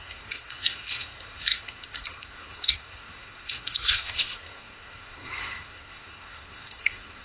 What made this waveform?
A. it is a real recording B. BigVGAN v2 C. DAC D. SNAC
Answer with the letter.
D